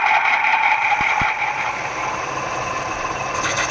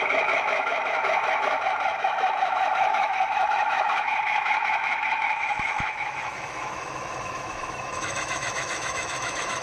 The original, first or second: first